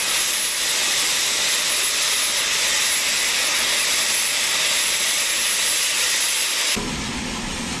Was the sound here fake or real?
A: real